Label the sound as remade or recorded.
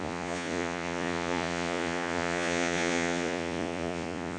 remade